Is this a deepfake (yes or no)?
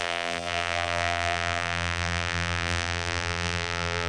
yes